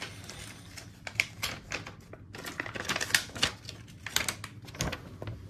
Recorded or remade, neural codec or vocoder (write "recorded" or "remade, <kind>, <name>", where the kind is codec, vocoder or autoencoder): recorded